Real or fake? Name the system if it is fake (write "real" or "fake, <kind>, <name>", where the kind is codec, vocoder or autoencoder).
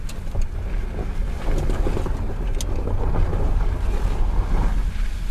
real